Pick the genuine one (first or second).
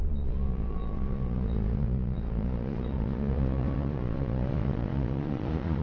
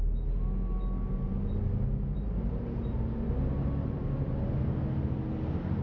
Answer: second